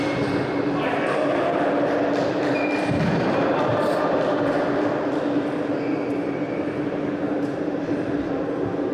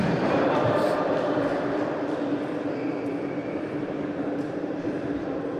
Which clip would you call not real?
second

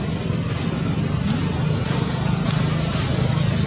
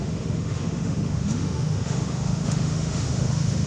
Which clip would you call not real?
second